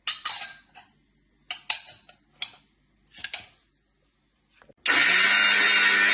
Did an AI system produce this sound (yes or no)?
no